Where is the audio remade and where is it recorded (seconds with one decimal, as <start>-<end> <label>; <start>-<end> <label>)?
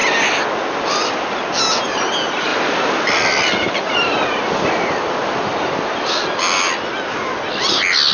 0.0-2.5 recorded; 2.5-6.9 remade; 6.9-8.1 recorded